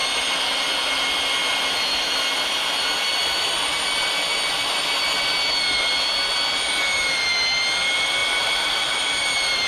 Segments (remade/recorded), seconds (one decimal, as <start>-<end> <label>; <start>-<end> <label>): 0.0-8.2 recorded; 8.2-9.7 remade